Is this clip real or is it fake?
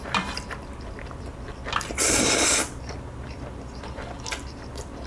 real